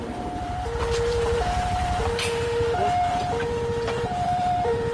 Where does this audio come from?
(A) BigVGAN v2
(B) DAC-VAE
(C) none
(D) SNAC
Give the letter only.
A